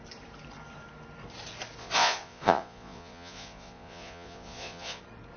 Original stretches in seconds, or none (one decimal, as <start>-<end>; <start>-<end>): 0.0-1.8; 5.0-5.4